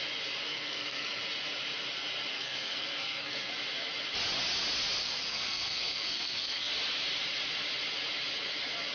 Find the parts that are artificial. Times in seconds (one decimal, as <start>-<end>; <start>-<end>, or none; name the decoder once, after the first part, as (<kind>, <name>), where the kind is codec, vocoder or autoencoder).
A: 0.5-1.2 (codec, SNAC); 2.3-3.5; 5.0-6.7